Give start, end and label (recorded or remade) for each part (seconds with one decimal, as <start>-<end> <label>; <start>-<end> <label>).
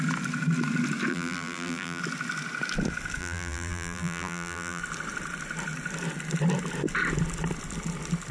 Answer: 0.0-1.1 recorded; 1.1-2.0 remade; 2.0-3.2 recorded; 3.2-4.8 remade; 4.8-8.3 recorded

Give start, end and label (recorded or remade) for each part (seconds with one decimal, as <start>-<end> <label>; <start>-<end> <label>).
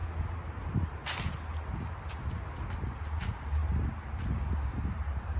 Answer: 0.0-0.6 recorded; 0.6-1.0 remade; 1.0-3.0 recorded; 3.0-3.6 remade; 3.6-4.5 recorded; 4.5-5.4 remade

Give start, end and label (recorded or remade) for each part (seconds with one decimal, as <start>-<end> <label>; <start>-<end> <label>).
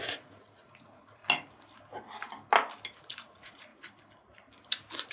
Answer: 0.0-1.2 remade; 1.2-3.1 recorded; 3.1-3.7 remade; 3.7-5.1 recorded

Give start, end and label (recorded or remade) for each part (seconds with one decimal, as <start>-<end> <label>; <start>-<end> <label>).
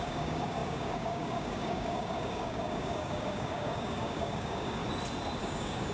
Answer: 0.0-4.8 remade; 4.8-5.4 recorded; 5.4-5.9 remade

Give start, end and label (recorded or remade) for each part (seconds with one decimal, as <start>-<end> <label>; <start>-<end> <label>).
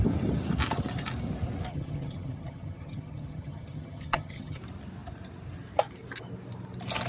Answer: 0.0-1.7 recorded; 1.7-4.6 remade; 4.6-7.1 recorded